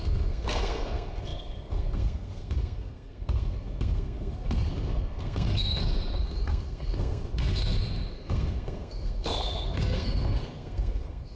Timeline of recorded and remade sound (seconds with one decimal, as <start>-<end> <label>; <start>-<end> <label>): 0.0-11.4 remade